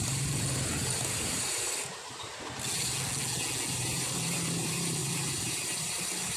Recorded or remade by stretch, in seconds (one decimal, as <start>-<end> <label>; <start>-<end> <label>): 0.0-2.3 remade; 2.3-3.7 recorded; 3.7-6.4 remade